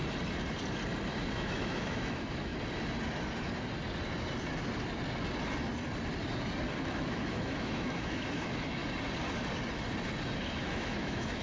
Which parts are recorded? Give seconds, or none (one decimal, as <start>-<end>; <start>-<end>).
0.0-1.3; 2.5-6.8; 8.8-10.5